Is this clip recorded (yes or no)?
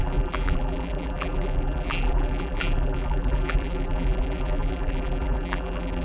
no